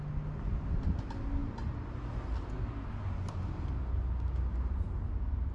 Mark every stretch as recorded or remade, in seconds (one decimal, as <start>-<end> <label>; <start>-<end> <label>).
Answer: 0.0-4.5 recorded; 4.5-5.5 remade